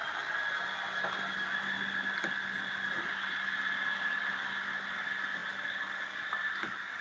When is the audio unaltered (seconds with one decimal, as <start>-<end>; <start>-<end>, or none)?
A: 0.0-7.0